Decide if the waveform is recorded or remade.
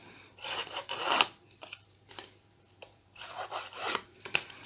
remade